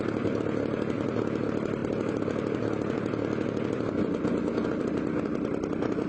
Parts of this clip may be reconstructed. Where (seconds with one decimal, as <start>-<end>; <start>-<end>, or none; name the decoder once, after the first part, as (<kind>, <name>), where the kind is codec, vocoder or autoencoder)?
none